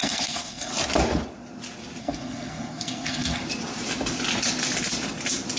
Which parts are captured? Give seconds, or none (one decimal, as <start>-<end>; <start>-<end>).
0.7-2.0; 3.4-5.6